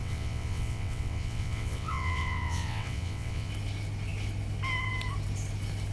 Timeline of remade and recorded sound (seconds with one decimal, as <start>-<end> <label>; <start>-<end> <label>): 0.0-3.5 remade; 3.5-5.9 recorded